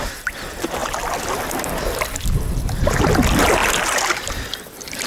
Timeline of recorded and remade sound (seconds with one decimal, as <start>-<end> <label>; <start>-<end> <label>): 0.0-5.1 recorded